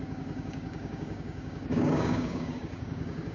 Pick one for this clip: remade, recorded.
remade